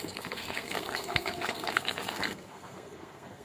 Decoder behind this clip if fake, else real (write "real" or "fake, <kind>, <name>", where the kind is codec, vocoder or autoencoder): fake, codec, SNAC